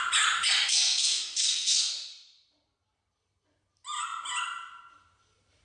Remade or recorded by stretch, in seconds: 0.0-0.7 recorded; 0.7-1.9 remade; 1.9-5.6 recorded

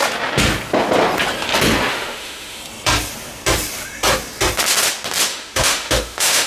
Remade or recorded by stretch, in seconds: 0.0-1.9 recorded; 1.9-2.6 remade; 2.6-5.3 recorded; 5.3-6.5 remade

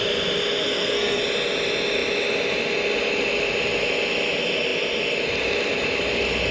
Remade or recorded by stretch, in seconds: 0.0-0.6 recorded; 0.6-1.2 remade; 1.2-6.5 recorded

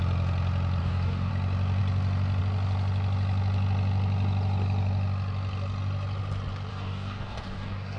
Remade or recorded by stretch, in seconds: 0.0-0.8 recorded; 0.8-1.3 remade; 1.3-6.7 recorded; 6.7-8.0 remade

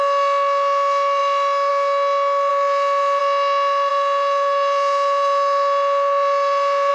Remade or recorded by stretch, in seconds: 0.0-2.5 recorded; 2.5-3.2 remade; 3.2-3.9 recorded; 3.9-6.9 remade

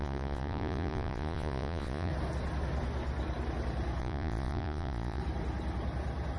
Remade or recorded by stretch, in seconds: 0.0-2.1 remade; 2.1-4.0 recorded; 4.0-5.2 remade; 5.2-6.4 recorded

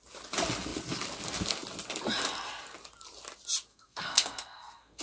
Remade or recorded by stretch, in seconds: 0.0-3.7 recorded; 3.7-5.0 remade

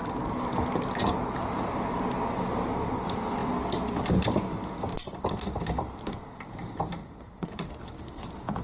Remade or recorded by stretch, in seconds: 0.0-7.0 recorded; 7.0-7.7 remade; 7.7-8.6 recorded